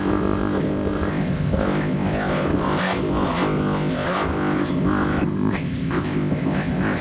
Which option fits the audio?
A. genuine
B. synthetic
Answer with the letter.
B